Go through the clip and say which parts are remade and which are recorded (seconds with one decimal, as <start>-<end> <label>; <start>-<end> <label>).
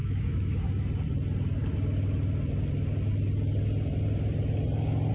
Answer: 0.0-0.6 remade; 0.6-5.1 recorded